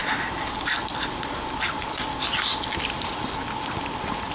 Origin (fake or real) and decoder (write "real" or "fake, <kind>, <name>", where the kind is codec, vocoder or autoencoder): real